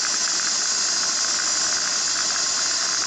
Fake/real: real